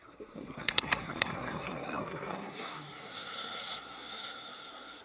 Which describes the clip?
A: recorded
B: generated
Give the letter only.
B